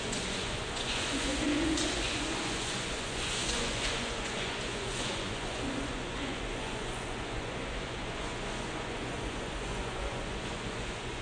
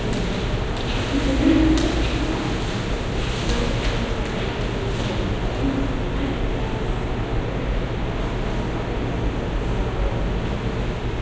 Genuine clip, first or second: second